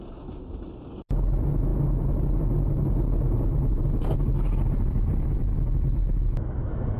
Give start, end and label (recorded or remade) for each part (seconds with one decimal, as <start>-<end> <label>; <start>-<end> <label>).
0.0-1.7 recorded; 1.7-2.5 remade; 2.5-4.3 recorded; 4.3-5.1 remade; 5.1-7.0 recorded